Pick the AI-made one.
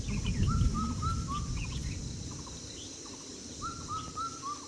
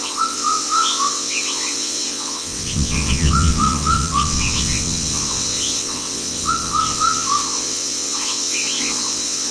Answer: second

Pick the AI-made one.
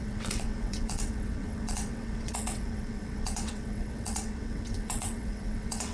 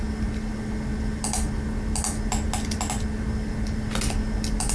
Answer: first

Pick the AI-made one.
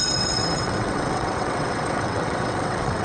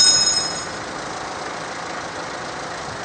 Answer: first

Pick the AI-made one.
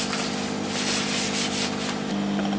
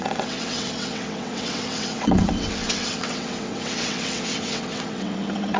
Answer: second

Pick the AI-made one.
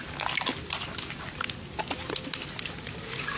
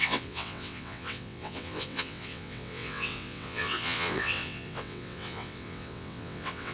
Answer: second